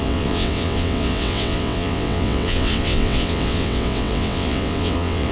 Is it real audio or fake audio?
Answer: fake